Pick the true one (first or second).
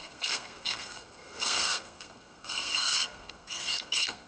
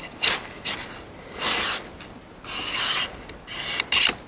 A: second